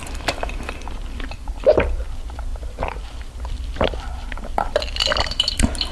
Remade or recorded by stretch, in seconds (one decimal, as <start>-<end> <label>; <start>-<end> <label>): 0.0-1.6 remade; 1.6-2.5 recorded; 2.5-5.5 remade; 5.5-5.9 recorded